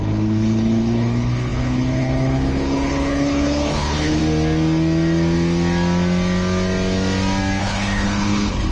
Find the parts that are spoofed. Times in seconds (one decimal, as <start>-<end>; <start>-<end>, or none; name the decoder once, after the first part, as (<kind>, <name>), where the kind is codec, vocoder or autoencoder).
0.0-4.2 (codec, HILCodec); 7.6-8.7